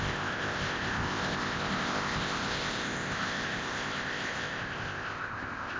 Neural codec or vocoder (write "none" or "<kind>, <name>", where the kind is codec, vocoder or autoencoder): codec, ZipCodec